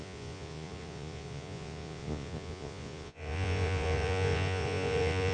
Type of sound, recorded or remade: remade